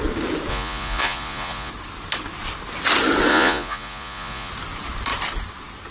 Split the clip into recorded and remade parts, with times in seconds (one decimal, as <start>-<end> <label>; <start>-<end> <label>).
0.0-0.5 recorded; 0.5-1.7 remade; 1.7-3.3 recorded; 3.3-4.5 remade; 4.5-5.9 recorded